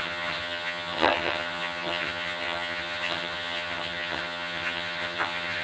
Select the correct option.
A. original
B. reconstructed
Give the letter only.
B